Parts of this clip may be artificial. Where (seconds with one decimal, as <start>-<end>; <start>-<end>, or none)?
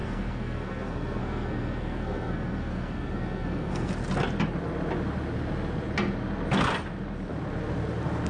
0.0-3.9